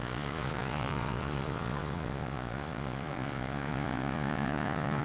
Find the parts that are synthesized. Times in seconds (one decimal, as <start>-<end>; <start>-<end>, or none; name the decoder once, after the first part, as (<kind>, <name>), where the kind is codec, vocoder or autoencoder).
0.0-5.0 (vocoder, Vocos)

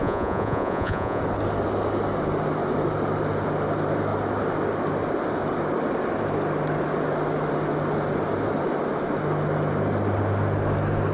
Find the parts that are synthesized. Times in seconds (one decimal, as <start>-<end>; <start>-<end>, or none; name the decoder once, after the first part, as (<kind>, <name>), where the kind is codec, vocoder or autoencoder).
0.0-1.2 (vocoder, Vocos)